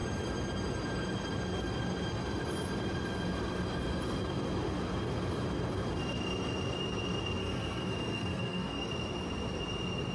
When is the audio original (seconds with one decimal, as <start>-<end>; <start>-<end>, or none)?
0.0-7.4; 8.9-10.1